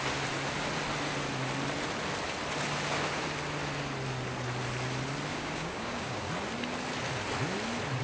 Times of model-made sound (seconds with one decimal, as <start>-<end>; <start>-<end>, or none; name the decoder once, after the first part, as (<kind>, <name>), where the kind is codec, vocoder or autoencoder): 5.3-6.3 (codec, DAC)